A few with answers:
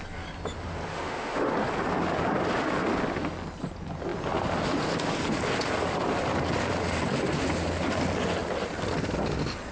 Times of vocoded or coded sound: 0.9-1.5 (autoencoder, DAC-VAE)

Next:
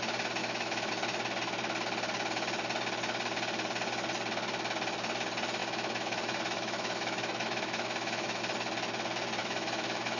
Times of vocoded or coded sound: 0.4-0.9 (autoencoder, DAC-VAE); 5.6-8.4; 9.4-10.2

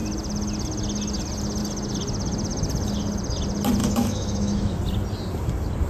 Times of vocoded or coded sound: 3.8-4.8 (autoencoder, DAC-VAE)

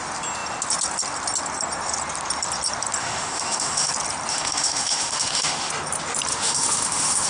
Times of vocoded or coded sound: 3.0-3.9 (autoencoder, DAC-VAE); 4.3-5.7; 6.3-7.3

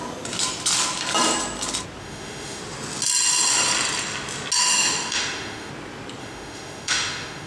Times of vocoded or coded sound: 2.0-2.6 (autoencoder, DAC-VAE); 4.6-5.7; 6.2-7.5

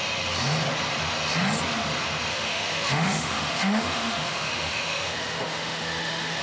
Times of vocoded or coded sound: 2.3-6.4 (autoencoder, DAC-VAE)